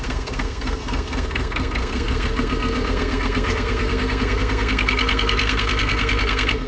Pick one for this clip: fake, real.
fake